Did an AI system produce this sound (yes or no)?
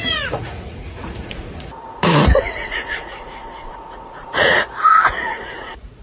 yes